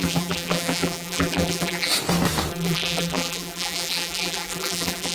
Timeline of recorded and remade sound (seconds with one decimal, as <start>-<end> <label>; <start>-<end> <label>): 0.0-1.9 remade; 1.9-2.5 recorded; 2.5-5.1 remade